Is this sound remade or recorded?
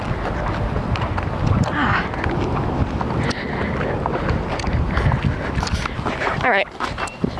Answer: recorded